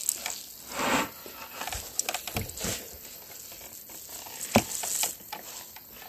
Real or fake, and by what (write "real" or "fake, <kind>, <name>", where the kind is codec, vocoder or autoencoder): real